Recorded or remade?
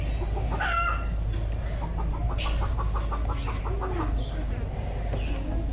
recorded